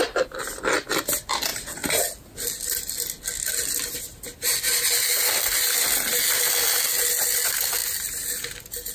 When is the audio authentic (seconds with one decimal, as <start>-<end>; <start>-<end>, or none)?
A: 0.0-8.9